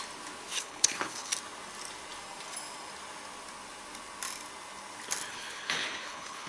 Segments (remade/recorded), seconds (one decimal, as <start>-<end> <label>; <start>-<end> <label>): 0.0-0.5 recorded; 0.5-1.3 remade; 1.3-5.3 recorded; 5.3-6.5 remade